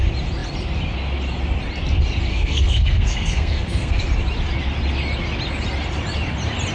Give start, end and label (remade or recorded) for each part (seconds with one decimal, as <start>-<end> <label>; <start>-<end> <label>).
0.0-2.3 recorded; 2.3-4.0 remade; 4.0-6.7 recorded